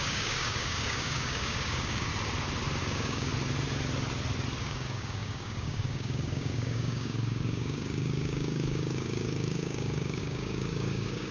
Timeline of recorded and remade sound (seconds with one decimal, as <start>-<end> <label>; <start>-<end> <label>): 0.0-2.1 remade; 2.1-2.8 recorded; 2.8-3.3 remade; 3.3-4.6 recorded; 4.6-11.3 remade